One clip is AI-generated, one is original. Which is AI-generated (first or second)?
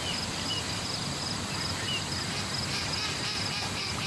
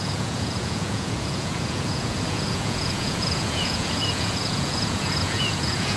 second